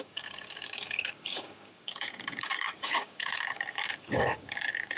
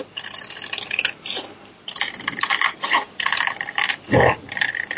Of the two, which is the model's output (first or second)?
first